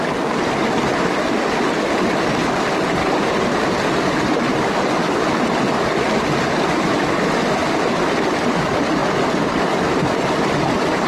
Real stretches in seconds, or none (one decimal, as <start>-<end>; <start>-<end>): 0.0-11.1